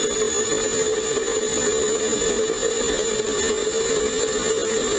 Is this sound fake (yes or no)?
no